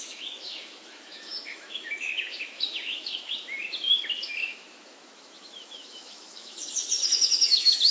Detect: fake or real fake